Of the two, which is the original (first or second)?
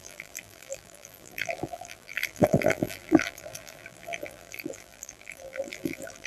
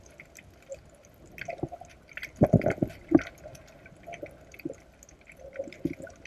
second